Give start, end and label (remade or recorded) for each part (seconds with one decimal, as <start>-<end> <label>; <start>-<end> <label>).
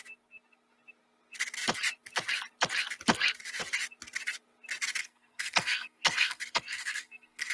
0.0-5.0 recorded; 5.0-7.5 remade